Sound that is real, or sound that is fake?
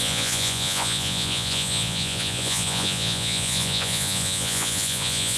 fake